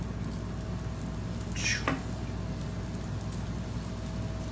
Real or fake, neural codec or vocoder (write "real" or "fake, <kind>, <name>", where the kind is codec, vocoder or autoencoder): real